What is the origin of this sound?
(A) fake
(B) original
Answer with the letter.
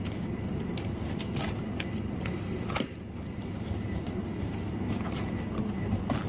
B